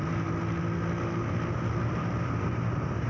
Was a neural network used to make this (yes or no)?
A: no